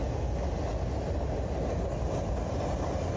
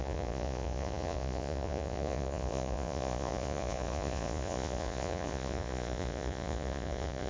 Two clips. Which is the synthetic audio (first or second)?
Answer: second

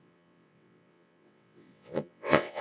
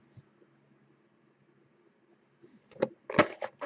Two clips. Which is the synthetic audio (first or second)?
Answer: first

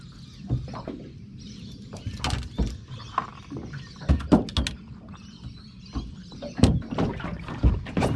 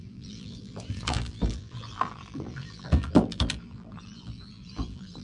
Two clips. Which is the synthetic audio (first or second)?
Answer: second